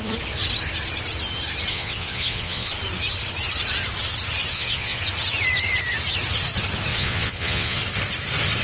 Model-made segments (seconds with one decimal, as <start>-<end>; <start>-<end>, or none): 1.7-2.7; 4.5-5.0; 6.9-7.8